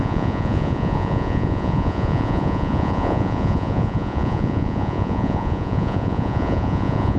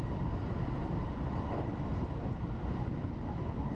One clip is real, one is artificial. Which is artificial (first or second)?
first